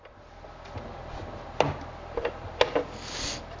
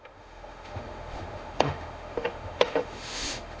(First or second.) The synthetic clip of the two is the second